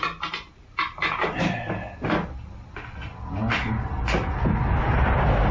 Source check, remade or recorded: recorded